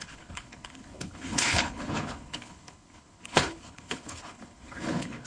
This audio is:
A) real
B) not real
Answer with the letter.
B